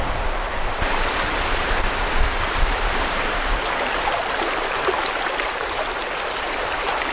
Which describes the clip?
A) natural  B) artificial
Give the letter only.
B